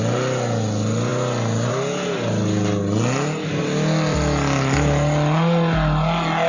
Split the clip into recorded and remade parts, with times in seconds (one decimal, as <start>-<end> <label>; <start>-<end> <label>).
0.0-6.5 recorded